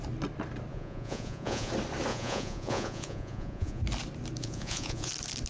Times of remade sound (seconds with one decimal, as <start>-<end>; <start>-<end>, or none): 0.7-1.7; 2.1-3.8; 4.4-5.1